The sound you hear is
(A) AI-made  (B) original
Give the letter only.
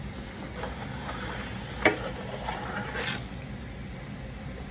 B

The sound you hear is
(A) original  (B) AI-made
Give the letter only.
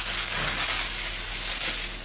B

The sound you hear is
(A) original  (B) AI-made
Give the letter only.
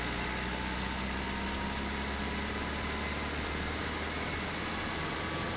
A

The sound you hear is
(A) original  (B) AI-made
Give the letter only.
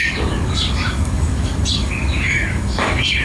B